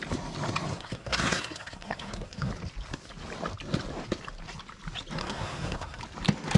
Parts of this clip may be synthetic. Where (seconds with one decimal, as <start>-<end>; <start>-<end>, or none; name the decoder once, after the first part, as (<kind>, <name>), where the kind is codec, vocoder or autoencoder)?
0.7-2.5 (codec, SNAC); 5.2-6.0